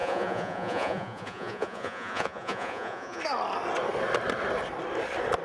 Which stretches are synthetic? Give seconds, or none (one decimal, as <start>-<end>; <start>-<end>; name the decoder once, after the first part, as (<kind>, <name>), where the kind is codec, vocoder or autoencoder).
0.0-3.2 (vocoder, Vocos)